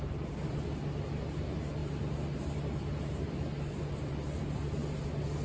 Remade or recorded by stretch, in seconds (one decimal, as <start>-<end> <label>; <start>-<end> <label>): 0.0-5.4 recorded